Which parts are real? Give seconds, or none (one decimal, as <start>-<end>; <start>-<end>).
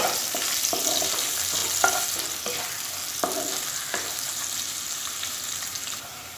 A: 0.0-4.0